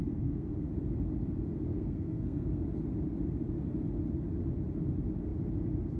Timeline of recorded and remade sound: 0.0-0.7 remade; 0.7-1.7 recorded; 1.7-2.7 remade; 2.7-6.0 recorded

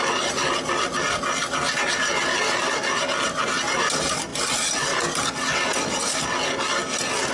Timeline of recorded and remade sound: 0.0-7.3 recorded